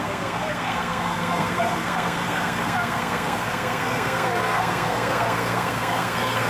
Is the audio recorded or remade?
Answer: remade